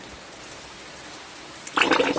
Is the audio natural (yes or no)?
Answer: yes